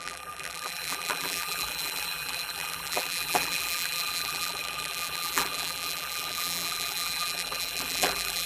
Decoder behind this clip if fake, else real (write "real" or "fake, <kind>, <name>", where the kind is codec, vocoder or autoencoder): fake, vocoder, BigVGAN v2